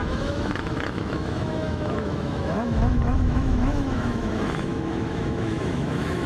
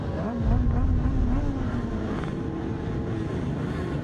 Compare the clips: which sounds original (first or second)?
second